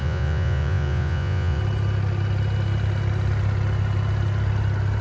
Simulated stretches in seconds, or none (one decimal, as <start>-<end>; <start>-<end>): 0.0-1.6